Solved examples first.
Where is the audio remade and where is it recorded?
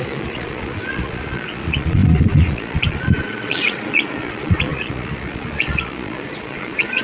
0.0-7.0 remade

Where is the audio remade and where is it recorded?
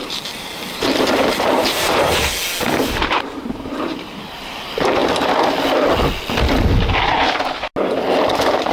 0.0-2.3 remade; 2.3-2.8 recorded; 2.8-5.0 remade; 5.0-8.7 recorded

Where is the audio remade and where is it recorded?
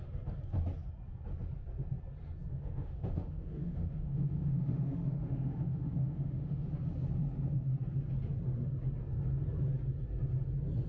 0.0-2.5 recorded; 2.5-6.7 remade; 6.7-10.9 recorded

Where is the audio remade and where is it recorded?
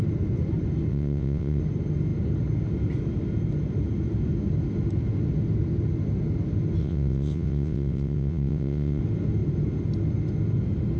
0.0-0.9 recorded; 0.9-1.6 remade; 1.6-6.8 recorded; 6.8-9.0 remade; 9.0-11.0 recorded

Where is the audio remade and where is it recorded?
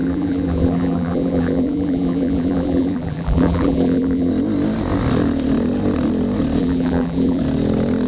0.0-4.3 remade; 4.3-6.6 recorded; 6.6-7.4 remade; 7.4-8.1 recorded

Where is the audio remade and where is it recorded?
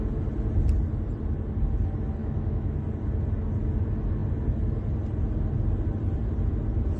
0.0-2.2 recorded; 2.2-2.8 remade; 2.8-7.0 recorded